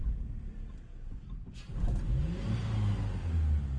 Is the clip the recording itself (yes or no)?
yes